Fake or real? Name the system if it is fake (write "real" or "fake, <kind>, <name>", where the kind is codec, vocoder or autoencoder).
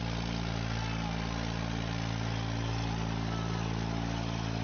real